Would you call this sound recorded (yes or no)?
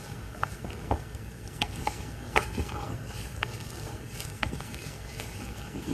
no